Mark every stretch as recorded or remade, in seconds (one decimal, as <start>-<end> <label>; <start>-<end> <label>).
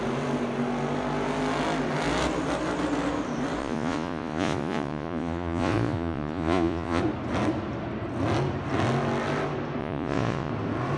0.0-3.6 recorded; 3.6-7.0 remade; 7.0-9.8 recorded; 9.8-10.5 remade; 10.5-11.0 recorded